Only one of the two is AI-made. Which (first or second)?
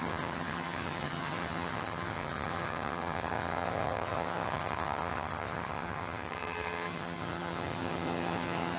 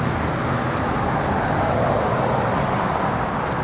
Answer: first